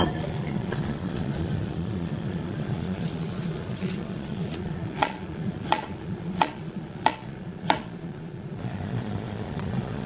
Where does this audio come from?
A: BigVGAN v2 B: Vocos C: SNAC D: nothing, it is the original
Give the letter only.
B